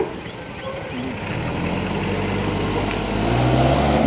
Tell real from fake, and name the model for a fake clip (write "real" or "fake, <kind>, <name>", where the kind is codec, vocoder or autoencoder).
real